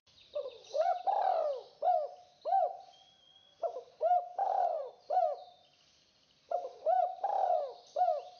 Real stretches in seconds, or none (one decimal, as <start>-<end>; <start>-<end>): 1.0-4.4; 4.9-8.4